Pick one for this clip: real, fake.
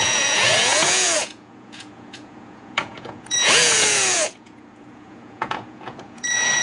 fake